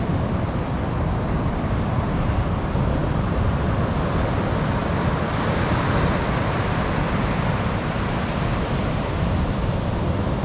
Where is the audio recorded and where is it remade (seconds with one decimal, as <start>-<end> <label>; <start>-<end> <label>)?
0.0-3.0 recorded; 3.0-3.6 remade; 3.6-9.6 recorded; 9.6-10.4 remade